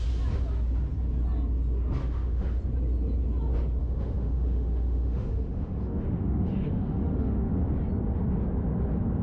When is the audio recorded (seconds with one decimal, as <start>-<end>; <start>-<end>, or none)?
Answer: 0.0-2.0; 2.6-3.8; 7.5-9.2